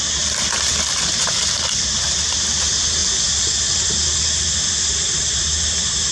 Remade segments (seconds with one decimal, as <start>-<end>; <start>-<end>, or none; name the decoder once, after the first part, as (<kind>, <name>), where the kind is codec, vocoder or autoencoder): none